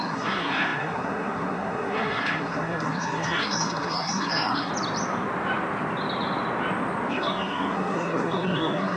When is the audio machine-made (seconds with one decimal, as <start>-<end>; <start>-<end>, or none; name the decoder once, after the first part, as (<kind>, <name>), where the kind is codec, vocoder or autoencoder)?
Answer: 0.0-4.7 (codec, SNAC); 7.1-9.0